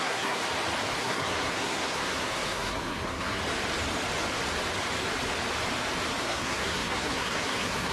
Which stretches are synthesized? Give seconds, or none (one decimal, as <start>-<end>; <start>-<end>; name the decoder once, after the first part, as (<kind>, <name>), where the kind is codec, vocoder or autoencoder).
0.0-0.4 (codec, SNAC); 1.0-3.4; 6.2-7.9

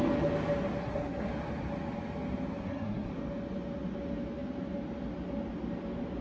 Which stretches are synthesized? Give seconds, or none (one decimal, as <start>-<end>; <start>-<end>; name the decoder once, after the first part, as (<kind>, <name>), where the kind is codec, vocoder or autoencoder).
0.8-1.3 (codec, SNAC); 2.6-3.1

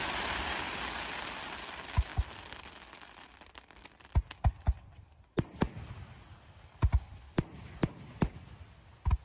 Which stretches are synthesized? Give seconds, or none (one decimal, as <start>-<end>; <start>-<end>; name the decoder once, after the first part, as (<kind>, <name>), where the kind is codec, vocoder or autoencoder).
none

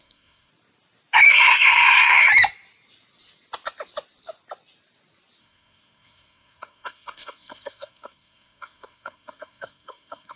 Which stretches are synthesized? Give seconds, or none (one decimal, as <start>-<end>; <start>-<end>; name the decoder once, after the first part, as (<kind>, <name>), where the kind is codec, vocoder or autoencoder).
0.0-0.5 (codec, SNAC); 1.3-2.3; 5.4-10.4

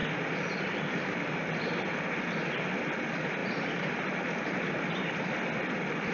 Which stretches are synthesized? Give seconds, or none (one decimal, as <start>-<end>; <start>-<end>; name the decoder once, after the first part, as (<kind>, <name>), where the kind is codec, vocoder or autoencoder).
none

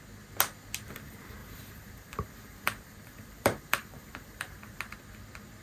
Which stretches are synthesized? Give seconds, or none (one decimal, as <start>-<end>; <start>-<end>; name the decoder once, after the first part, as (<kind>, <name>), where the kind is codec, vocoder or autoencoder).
1.4-4.8 (vocoder, BigVGAN v2)